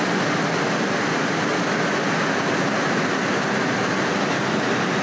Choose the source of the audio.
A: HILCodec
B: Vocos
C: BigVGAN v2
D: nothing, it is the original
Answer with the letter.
D